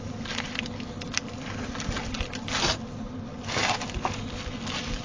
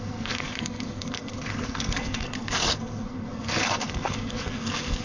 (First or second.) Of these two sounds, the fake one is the second